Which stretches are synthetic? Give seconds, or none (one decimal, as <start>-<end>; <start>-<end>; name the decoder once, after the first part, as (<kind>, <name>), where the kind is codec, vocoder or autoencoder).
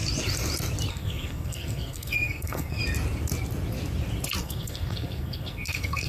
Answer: 0.9-2.8 (codec, SNAC); 4.4-6.1